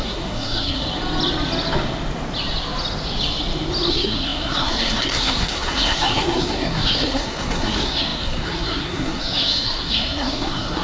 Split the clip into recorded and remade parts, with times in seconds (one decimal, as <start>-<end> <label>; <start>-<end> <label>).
0.0-0.8 remade; 0.8-3.9 recorded; 3.9-10.8 remade

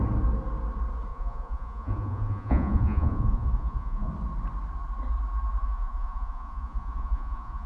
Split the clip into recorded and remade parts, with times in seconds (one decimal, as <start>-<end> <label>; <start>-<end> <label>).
0.0-1.1 recorded; 1.1-4.1 remade; 4.1-5.6 recorded; 5.6-7.7 remade

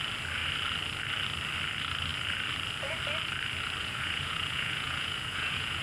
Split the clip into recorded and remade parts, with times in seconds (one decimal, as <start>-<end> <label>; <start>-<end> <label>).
0.0-3.8 recorded; 3.8-5.8 remade